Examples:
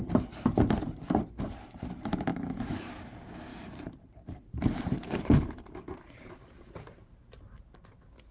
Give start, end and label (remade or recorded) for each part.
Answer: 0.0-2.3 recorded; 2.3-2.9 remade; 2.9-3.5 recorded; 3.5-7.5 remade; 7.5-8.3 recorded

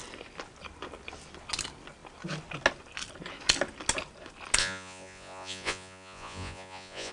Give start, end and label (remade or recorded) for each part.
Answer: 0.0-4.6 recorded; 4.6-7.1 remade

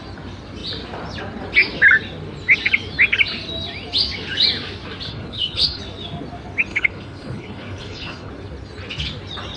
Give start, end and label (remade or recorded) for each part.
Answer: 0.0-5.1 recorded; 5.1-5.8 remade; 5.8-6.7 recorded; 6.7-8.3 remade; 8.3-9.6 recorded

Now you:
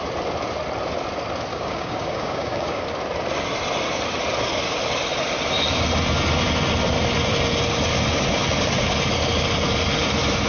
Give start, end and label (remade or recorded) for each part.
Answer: 0.0-1.5 recorded; 1.5-2.8 remade; 2.8-10.5 recorded

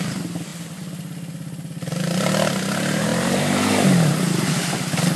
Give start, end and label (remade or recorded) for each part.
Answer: 0.0-5.2 recorded

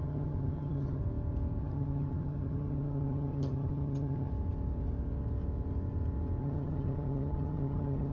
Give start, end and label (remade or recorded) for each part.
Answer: 0.0-1.0 remade; 1.0-1.6 recorded; 1.6-4.3 remade; 4.3-6.4 recorded; 6.4-8.1 remade

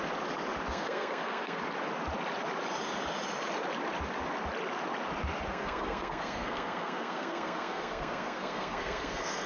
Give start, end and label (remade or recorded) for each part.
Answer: 0.0-0.7 recorded; 0.7-1.6 remade; 1.6-5.5 recorded; 5.5-9.5 remade

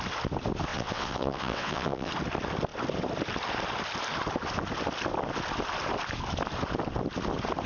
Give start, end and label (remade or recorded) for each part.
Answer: 0.0-0.7 recorded; 0.7-2.1 remade; 2.1-7.7 recorded